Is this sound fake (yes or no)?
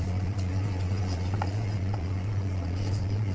yes